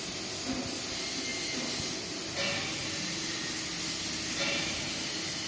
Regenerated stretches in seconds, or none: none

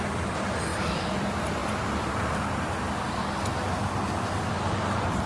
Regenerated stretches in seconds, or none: none